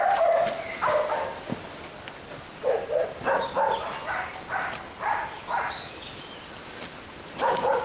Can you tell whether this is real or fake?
real